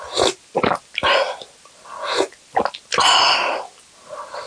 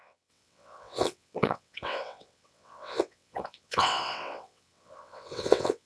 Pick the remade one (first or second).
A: second